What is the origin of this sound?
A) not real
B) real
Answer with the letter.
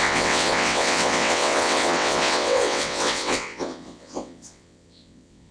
A